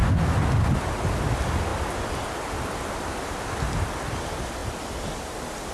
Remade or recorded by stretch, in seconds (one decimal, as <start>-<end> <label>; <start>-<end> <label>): 0.0-5.7 recorded